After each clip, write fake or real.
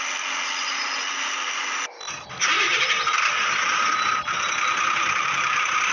real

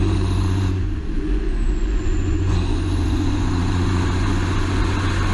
fake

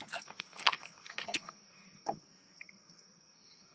fake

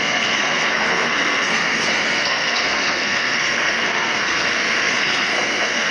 fake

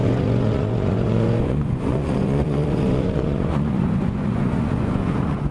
fake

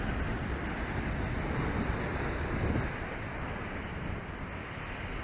real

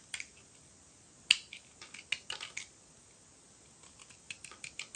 real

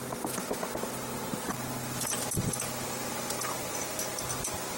real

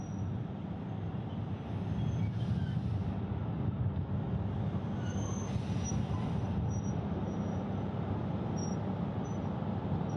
real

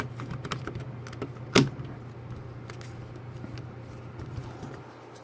real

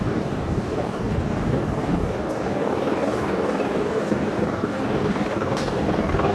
fake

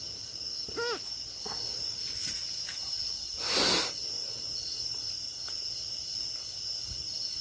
real